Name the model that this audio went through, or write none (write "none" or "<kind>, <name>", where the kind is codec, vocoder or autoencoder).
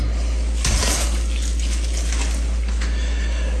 none